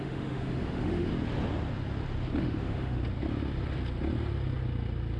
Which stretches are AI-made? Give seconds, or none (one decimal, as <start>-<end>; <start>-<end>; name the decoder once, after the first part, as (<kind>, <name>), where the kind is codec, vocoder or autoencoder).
0.0-1.1 (autoencoder, DAC-VAE); 2.4-3.0